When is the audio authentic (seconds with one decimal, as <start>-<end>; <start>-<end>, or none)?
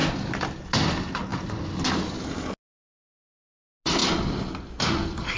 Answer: 0.0-5.4